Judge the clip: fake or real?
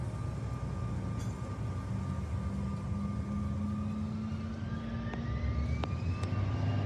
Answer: real